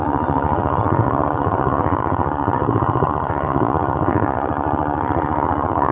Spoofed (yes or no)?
yes